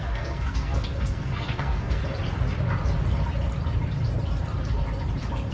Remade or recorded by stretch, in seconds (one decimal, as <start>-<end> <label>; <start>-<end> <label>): 0.0-2.0 remade; 2.0-5.5 recorded